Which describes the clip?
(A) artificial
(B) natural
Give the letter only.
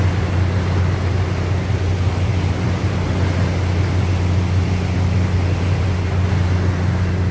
B